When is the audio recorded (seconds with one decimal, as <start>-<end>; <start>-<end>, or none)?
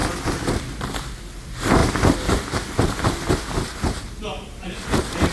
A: 0.0-0.6; 1.8-5.3